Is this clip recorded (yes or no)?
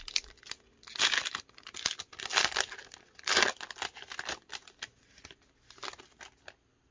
yes